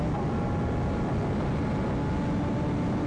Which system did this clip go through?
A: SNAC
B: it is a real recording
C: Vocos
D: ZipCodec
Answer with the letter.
B